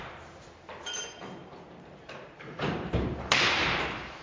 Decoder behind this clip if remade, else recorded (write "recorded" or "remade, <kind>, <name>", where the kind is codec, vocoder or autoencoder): remade, vocoder, BigVGAN v2